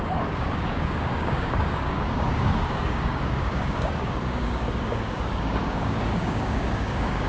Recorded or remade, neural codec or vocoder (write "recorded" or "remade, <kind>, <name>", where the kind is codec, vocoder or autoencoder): remade, codec, DAC